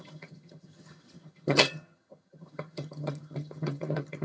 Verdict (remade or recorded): remade